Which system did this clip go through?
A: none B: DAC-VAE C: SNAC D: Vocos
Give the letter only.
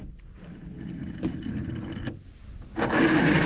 A